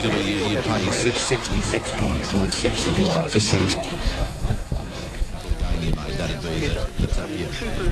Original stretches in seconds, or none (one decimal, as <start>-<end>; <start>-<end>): 0.0-1.0; 5.3-7.9